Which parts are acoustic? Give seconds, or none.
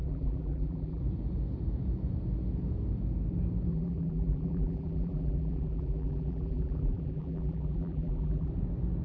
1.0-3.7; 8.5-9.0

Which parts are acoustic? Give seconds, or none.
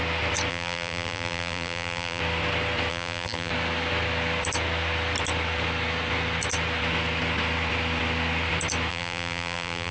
0.0-0.5; 2.2-2.9; 3.5-8.9